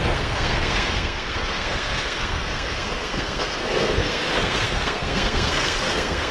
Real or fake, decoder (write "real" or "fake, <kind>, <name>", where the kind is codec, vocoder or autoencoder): fake, codec, SNAC